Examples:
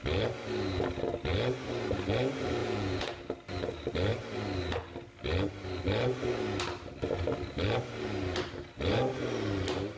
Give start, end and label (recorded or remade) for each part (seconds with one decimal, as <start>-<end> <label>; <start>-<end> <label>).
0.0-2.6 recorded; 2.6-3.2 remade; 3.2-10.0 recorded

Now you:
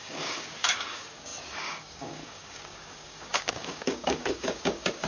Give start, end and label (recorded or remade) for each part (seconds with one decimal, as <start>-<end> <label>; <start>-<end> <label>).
0.0-5.1 remade

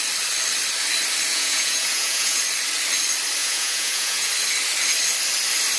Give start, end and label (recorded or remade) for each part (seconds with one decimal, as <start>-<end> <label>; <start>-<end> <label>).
0.0-1.3 recorded; 1.3-2.4 remade; 2.4-3.4 recorded; 3.4-4.3 remade; 4.3-5.8 recorded

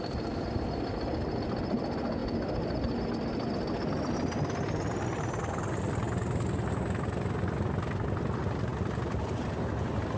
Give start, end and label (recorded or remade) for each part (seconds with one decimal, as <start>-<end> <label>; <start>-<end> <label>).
0.0-10.2 recorded

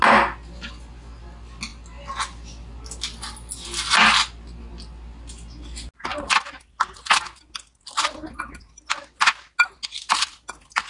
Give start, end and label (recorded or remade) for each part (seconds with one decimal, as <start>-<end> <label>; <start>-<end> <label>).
0.0-10.9 recorded